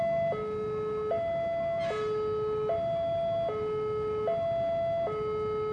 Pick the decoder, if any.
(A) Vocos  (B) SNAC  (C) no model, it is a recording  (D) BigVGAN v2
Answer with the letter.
C